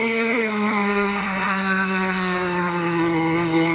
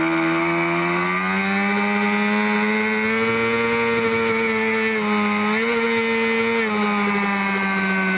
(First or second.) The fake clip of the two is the first